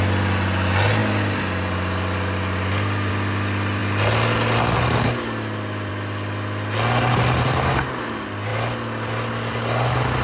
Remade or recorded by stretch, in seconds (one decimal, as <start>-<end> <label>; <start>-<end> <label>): 0.0-10.2 recorded

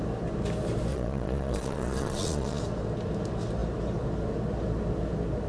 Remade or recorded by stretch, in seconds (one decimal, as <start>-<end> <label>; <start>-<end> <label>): 0.0-0.9 recorded; 0.9-2.6 remade; 2.6-5.5 recorded

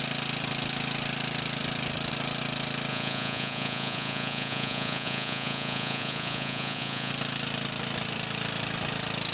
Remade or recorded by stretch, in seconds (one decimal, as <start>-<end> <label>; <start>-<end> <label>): 0.0-2.9 recorded; 2.9-7.1 remade; 7.1-9.3 recorded